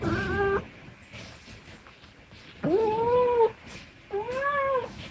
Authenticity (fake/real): real